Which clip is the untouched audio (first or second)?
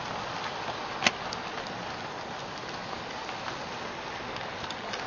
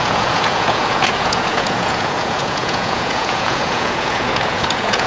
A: first